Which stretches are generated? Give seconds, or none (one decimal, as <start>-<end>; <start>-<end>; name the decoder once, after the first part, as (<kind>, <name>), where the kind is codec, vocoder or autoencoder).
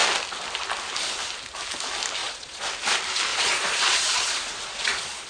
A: 2.2-2.7 (vocoder, Vocos); 3.3-5.3